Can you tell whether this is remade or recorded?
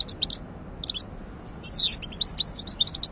recorded